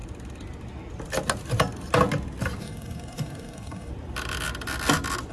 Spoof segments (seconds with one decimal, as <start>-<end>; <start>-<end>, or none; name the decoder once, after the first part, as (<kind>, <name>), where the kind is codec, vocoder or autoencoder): 2.6-3.9 (codec, DAC)